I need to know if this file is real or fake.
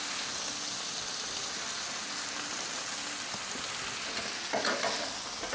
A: real